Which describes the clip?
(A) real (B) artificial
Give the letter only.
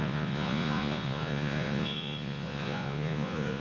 B